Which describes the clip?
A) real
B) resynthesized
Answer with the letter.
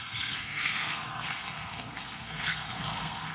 B